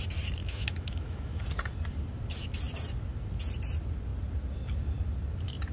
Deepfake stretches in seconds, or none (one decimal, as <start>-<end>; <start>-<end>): 0.4-1.4